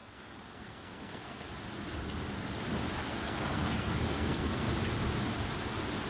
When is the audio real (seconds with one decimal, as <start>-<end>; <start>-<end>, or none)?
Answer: 1.5-3.0; 4.7-6.1